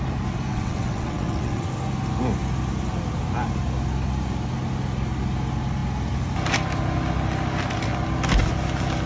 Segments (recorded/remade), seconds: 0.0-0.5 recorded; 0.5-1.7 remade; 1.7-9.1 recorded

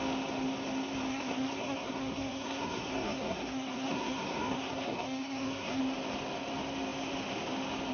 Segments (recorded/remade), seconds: 0.0-1.1 recorded; 1.1-5.8 remade; 5.8-7.9 recorded

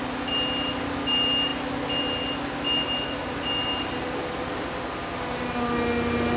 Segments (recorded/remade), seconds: 0.0-6.4 recorded

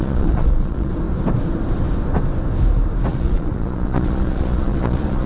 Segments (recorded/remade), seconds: 0.0-0.9 remade; 0.9-3.1 recorded; 3.1-5.3 remade

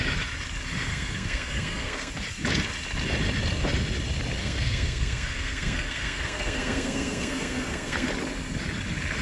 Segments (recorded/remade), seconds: 0.0-0.9 recorded; 0.9-2.1 remade; 2.1-4.4 recorded; 4.4-8.1 remade; 8.1-9.2 recorded

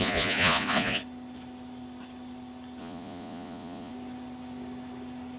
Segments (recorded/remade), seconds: 0.0-1.0 remade; 1.0-2.8 recorded; 2.8-3.9 remade; 3.9-5.4 recorded